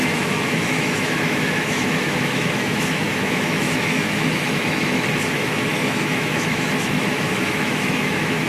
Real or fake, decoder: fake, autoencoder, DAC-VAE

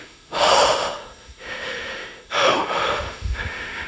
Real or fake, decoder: fake, autoencoder, DAC-VAE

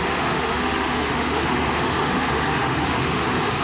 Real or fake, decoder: fake, autoencoder, DAC-VAE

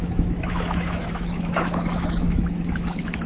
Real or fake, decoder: fake, autoencoder, DAC-VAE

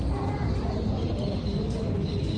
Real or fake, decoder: real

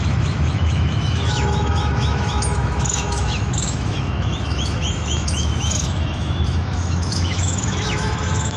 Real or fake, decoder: fake, autoencoder, DAC-VAE